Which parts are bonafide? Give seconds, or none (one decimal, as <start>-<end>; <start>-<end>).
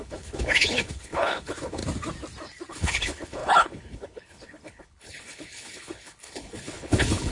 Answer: 1.8-2.7